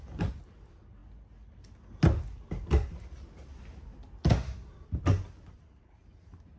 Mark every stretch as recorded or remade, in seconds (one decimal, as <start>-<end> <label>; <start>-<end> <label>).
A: 0.0-6.6 recorded